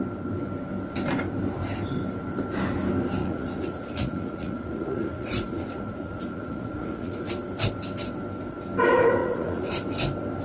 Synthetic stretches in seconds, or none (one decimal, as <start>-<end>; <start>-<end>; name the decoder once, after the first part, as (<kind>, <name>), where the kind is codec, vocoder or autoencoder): 3.2-7.3 (vocoder, Vocos); 9.2-9.7